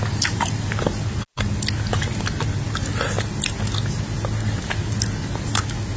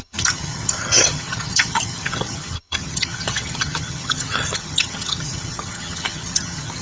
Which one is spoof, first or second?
second